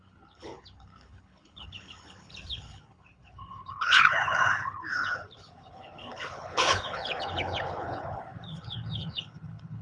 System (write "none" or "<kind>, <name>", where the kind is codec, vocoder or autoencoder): codec, HILCodec